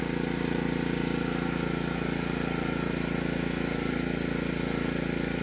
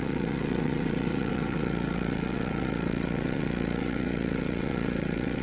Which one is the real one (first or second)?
first